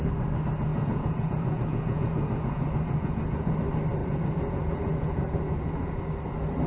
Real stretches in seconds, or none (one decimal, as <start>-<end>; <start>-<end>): 0.0-0.7; 3.6-4.0; 6.0-6.7